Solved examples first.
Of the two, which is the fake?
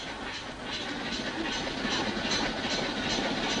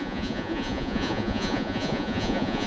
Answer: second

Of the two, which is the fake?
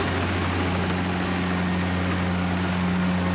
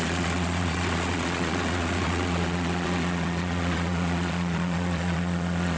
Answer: second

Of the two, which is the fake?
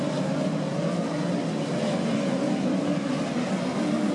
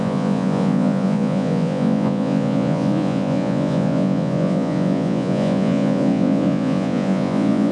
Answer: second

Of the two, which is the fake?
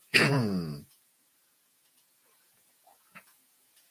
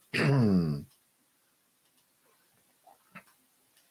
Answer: first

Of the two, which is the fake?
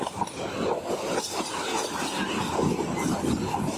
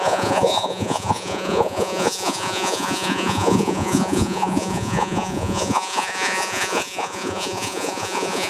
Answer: second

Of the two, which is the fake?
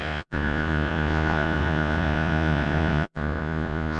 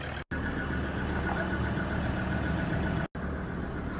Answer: first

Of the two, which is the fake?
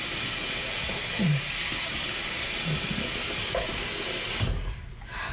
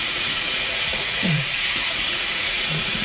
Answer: second